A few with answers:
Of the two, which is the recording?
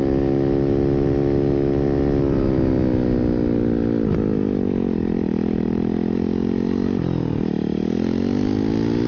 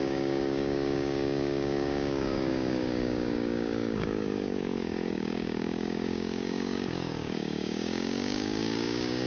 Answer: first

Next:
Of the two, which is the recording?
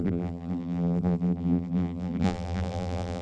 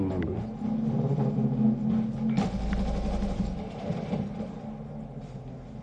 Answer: second